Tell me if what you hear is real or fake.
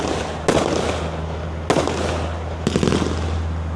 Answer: real